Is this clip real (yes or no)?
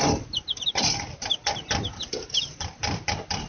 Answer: yes